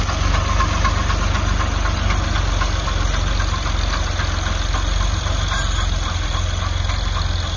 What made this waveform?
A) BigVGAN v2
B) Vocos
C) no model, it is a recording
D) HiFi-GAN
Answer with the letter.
C